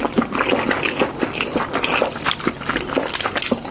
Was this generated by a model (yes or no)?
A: no